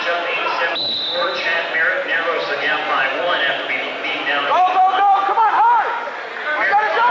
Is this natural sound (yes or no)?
yes